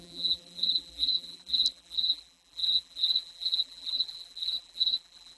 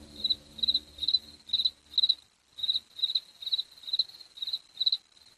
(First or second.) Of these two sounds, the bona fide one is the second